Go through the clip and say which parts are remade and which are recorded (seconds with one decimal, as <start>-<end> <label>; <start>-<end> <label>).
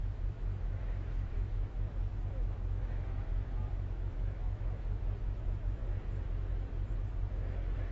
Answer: 0.0-5.8 remade; 5.8-7.9 recorded